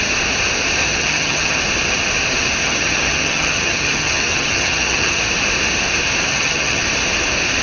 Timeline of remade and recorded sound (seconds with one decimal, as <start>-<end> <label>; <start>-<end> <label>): 0.0-0.8 recorded; 0.8-1.6 remade; 1.6-2.6 recorded; 2.6-5.2 remade; 5.2-6.3 recorded; 6.3-6.8 remade; 6.8-7.6 recorded

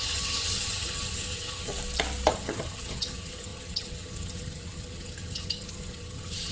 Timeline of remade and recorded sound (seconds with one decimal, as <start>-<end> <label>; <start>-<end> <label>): 0.0-1.7 remade; 1.7-2.3 recorded; 2.3-6.5 remade